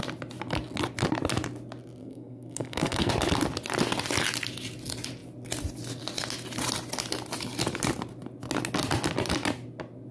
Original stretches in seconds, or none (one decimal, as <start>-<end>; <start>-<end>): 0.0-2.0; 3.1-10.1